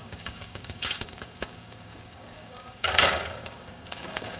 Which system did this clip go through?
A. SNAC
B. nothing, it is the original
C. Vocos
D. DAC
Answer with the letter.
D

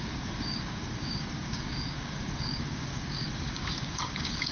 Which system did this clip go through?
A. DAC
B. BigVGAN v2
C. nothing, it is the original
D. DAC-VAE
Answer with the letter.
A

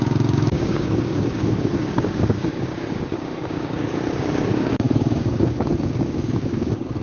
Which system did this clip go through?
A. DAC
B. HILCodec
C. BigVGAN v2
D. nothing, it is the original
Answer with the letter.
A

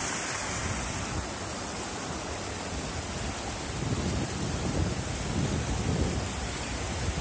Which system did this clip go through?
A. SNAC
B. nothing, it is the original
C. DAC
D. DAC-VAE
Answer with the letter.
B